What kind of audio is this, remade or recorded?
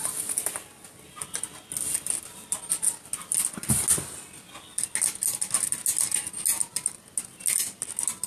recorded